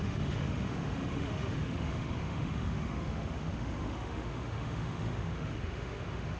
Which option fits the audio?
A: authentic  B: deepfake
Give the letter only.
B